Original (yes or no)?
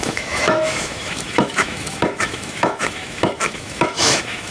no